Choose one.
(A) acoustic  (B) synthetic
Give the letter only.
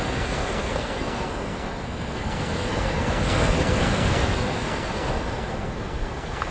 B